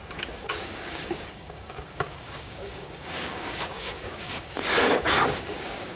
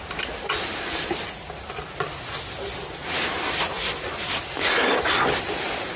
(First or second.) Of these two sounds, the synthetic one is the first